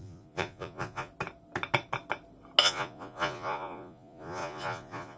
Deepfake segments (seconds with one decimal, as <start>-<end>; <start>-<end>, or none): 0.0-1.1; 2.6-5.2